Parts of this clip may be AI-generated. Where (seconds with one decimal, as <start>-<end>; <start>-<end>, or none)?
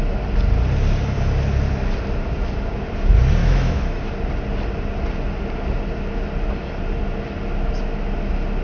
3.4-4.0